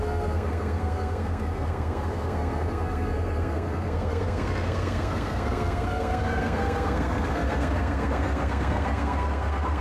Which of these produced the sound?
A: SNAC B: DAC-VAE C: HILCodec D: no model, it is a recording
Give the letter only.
A